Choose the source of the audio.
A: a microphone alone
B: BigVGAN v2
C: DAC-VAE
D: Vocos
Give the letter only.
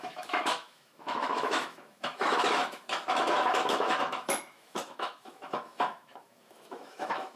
C